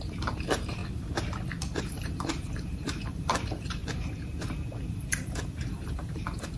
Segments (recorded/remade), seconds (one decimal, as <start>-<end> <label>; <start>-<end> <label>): 0.0-0.8 remade; 0.8-1.8 recorded; 1.8-3.8 remade; 3.8-4.8 recorded; 4.8-6.6 remade